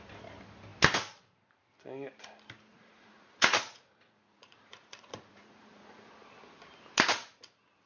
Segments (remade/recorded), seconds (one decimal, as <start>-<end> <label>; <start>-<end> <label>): 0.0-2.7 recorded; 2.7-6.1 remade; 6.1-7.9 recorded